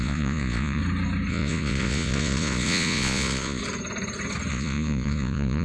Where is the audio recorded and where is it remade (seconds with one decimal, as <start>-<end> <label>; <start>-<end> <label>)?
0.0-0.8 remade; 0.8-1.3 recorded; 1.3-3.6 remade; 3.6-4.5 recorded; 4.5-5.6 remade